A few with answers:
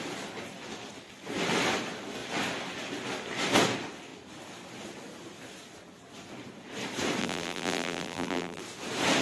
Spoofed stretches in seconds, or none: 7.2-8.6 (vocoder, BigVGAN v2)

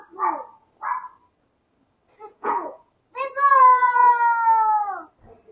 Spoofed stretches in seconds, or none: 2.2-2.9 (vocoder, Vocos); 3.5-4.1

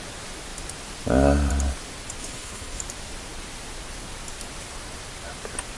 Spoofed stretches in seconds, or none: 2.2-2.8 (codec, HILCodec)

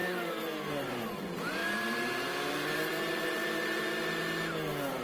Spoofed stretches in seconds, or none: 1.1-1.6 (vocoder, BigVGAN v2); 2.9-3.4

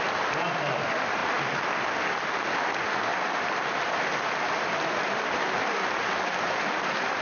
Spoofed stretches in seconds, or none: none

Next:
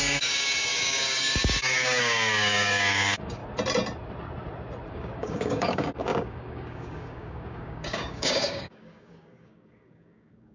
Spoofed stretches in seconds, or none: 0.0-3.4 (codec, DAC); 4.9-10.5

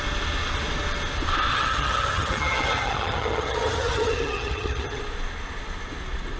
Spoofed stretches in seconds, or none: 1.5-5.0 (vocoder, HiFi-GAN)